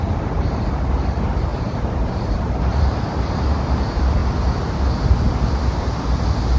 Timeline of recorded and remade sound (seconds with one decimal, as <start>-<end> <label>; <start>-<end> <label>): 0.0-4.2 remade; 4.2-5.6 recorded; 5.6-6.6 remade